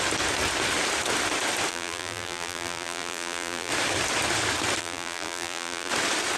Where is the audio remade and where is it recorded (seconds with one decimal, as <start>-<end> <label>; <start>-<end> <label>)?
0.0-1.7 recorded; 1.7-3.7 remade; 3.7-4.8 recorded; 4.8-5.9 remade; 5.9-6.4 recorded